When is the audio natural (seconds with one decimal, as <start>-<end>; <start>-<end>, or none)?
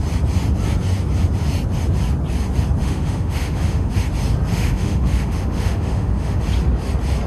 0.0-2.8; 3.9-4.5; 6.4-7.3